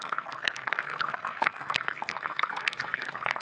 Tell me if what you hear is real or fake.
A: fake